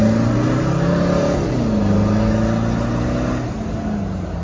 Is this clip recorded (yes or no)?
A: yes